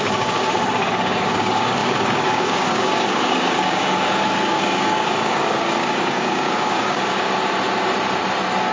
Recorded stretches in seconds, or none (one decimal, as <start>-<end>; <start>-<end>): 7.4-8.7